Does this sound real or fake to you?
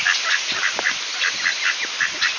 real